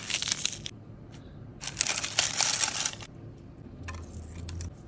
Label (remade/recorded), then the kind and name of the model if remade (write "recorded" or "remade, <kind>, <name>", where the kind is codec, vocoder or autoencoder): recorded